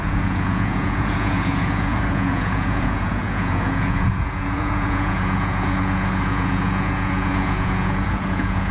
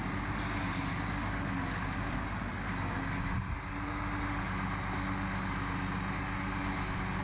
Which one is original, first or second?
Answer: second